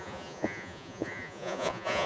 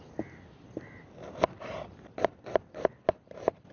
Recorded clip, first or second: second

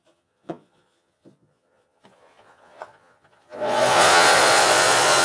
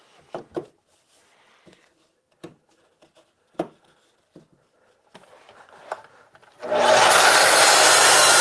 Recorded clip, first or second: second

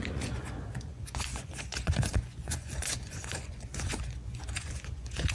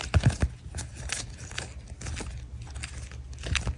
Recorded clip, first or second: second